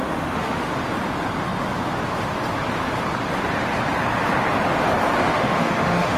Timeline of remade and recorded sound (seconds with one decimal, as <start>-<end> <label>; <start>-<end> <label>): 0.0-0.7 remade; 0.7-5.3 recorded; 5.3-6.2 remade